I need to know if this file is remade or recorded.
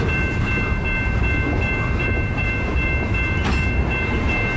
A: remade